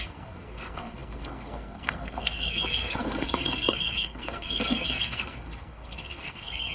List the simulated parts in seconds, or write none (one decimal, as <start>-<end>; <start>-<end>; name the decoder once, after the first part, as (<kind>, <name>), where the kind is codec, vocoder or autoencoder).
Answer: 0.0-6.7 (codec, SNAC)